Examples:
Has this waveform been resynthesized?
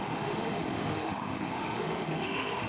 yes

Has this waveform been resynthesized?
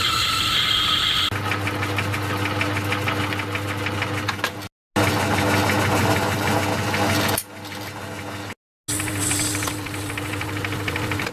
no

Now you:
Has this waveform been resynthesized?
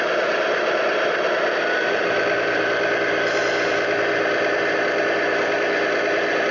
no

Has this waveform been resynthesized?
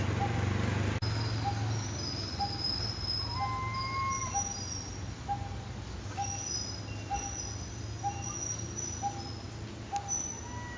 no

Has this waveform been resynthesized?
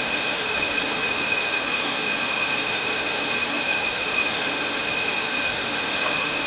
yes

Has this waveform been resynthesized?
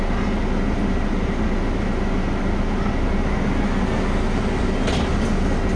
no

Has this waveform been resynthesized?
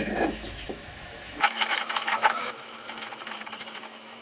yes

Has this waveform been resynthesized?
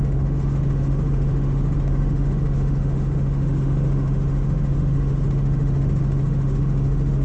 yes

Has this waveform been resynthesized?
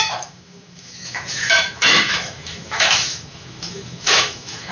yes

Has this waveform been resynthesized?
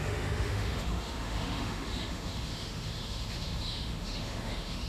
yes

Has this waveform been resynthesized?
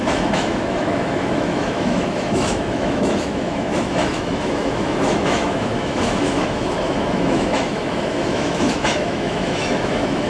yes